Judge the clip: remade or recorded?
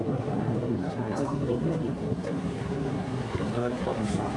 remade